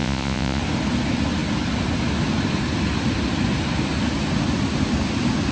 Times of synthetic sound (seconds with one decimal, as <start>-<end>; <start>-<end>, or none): 0.0-0.6